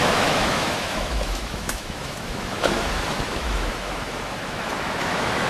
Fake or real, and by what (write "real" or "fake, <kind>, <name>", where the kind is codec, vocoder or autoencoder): fake, autoencoder, DAC-VAE